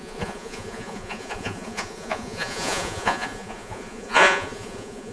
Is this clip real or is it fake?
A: fake